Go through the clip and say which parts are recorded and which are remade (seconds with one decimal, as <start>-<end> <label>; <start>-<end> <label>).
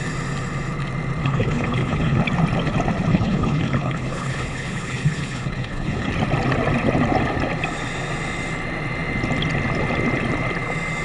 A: 0.0-1.2 recorded; 1.2-2.2 remade; 2.2-3.1 recorded; 3.1-6.1 remade; 6.1-11.0 recorded